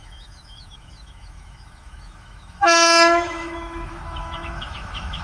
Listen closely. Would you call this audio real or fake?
fake